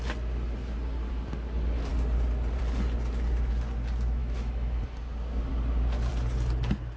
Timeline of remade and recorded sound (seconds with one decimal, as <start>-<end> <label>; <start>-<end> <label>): 0.0-4.2 recorded; 4.2-4.8 remade; 4.8-7.0 recorded